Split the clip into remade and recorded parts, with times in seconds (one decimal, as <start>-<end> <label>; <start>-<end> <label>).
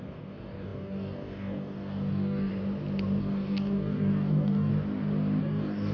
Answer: 0.0-2.5 remade; 2.5-3.2 recorded; 3.2-4.7 remade; 4.7-5.4 recorded; 5.4-5.9 remade